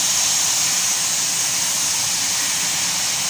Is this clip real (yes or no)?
yes